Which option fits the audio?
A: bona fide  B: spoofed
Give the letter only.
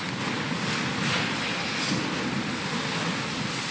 A